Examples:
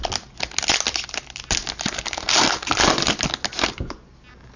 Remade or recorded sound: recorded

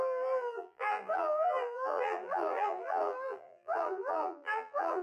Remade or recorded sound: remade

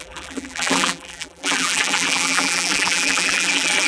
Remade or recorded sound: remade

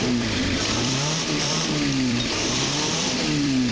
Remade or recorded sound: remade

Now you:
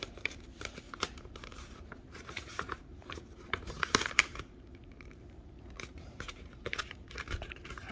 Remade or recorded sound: remade